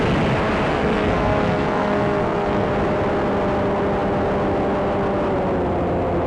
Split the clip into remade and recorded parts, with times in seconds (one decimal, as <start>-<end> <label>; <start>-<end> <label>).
0.0-0.7 recorded; 0.7-2.7 remade; 2.7-6.3 recorded